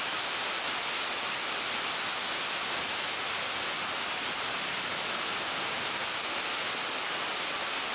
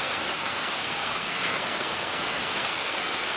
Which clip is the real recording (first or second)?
first